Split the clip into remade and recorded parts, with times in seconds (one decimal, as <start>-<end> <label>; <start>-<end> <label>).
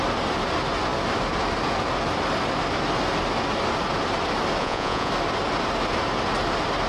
0.0-4.6 recorded; 4.6-5.1 remade; 5.1-6.9 recorded